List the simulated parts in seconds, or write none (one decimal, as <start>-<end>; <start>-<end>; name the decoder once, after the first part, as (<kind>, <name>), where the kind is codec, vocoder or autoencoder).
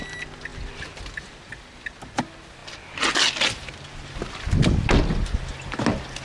none